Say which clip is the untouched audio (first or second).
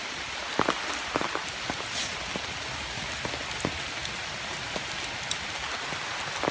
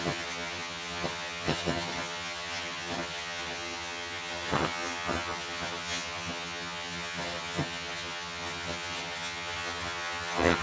first